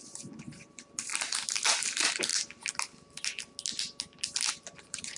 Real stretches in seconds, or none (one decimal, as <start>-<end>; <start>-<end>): 1.1-1.8; 2.3-4.5